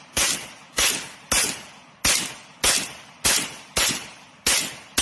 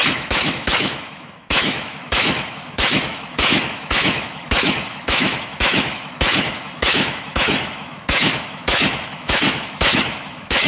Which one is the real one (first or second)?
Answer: first